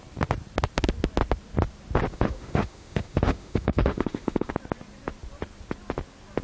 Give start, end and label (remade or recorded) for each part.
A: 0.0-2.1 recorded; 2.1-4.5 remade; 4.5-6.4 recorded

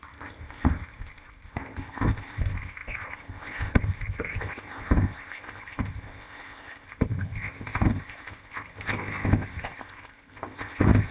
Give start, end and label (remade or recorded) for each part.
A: 0.0-11.1 remade

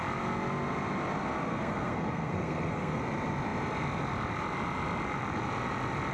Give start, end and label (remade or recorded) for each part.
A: 0.0-1.5 recorded; 1.5-3.0 remade; 3.0-6.1 recorded

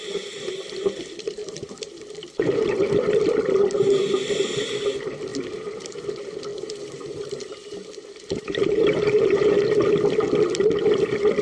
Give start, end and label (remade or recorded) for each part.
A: 0.0-1.4 recorded; 1.4-2.9 remade; 2.9-5.3 recorded; 5.3-6.0 remade; 6.0-6.5 recorded; 6.5-9.5 remade; 9.5-11.4 recorded

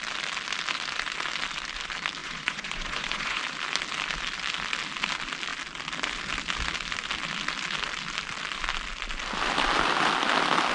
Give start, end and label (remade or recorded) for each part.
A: 0.0-2.2 recorded; 2.2-3.4 remade; 3.4-10.7 recorded

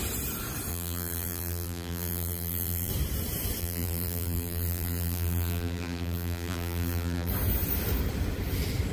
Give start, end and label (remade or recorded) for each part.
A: 0.0-0.7 recorded; 0.7-2.9 remade; 2.9-3.6 recorded; 3.6-7.3 remade; 7.3-8.9 recorded

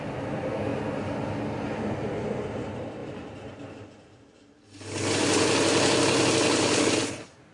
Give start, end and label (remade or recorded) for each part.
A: 0.0-7.5 recorded